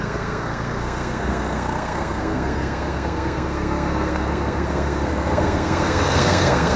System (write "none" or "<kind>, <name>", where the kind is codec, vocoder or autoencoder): codec, SNAC